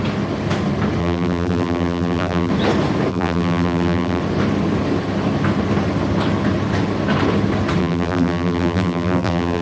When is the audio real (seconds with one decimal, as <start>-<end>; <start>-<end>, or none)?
0.0-1.0; 2.5-3.1; 4.2-7.8